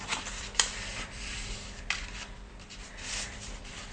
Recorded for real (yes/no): no